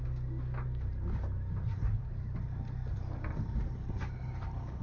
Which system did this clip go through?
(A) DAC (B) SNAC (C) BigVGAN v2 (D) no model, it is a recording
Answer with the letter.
D